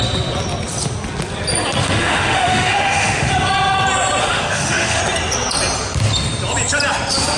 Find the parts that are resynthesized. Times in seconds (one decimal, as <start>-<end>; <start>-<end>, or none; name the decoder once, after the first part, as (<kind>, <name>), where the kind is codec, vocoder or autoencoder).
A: 1.8-3.3 (autoencoder, DAC-VAE); 4.2-5.0